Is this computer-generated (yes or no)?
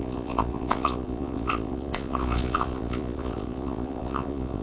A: yes